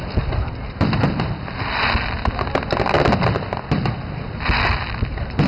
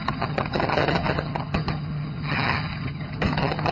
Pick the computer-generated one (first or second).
second